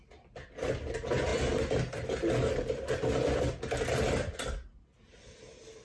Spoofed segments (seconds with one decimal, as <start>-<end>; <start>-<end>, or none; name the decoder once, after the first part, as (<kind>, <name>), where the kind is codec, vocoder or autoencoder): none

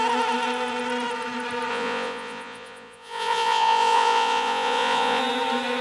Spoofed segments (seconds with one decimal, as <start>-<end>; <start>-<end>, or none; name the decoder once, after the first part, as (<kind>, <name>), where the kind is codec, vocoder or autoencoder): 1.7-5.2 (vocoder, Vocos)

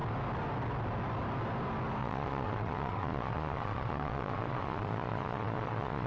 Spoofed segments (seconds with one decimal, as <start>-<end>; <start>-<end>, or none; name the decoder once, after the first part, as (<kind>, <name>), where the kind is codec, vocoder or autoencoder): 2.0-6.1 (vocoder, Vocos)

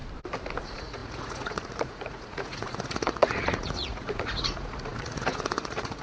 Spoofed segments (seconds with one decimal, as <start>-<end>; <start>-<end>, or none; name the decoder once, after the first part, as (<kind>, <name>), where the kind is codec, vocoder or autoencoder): 0.6-6.0 (vocoder, Vocos)

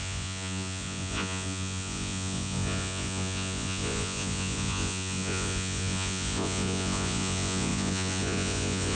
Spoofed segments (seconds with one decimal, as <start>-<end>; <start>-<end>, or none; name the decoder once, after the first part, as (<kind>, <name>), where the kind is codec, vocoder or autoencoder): 0.0-8.9 (vocoder, Vocos)